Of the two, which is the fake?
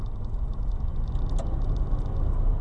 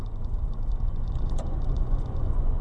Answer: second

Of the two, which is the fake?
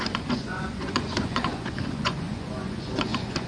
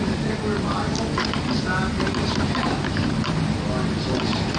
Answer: first